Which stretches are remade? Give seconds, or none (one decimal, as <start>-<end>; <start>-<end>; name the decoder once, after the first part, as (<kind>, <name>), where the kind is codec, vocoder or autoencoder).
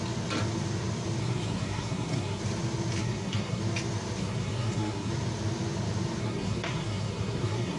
1.2-2.4 (codec, SNAC); 3.0-3.6; 4.2-5.1; 6.2-7.8